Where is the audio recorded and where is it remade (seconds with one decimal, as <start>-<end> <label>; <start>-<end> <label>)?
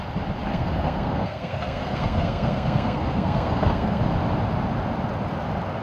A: 0.0-0.5 recorded; 0.5-4.0 remade; 4.0-5.8 recorded